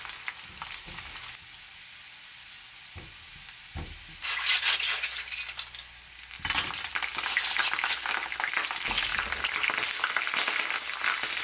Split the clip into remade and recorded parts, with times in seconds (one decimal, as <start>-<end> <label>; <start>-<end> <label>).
0.0-11.4 recorded